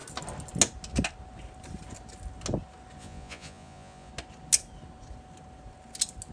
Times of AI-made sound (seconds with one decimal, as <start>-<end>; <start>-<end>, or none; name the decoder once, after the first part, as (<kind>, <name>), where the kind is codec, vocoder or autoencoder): 3.0-4.1 (vocoder, Vocos)